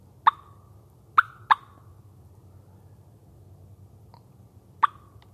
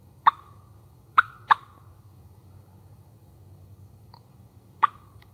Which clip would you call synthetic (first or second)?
second